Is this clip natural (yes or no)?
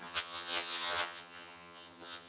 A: no